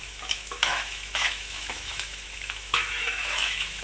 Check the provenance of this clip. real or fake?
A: fake